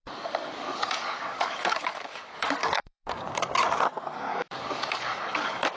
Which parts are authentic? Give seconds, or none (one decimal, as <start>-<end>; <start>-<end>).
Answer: 3.5-4.3